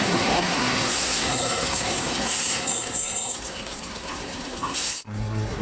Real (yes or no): no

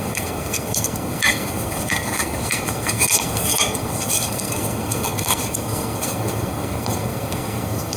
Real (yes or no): no